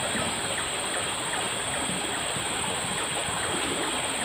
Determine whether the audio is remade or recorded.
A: recorded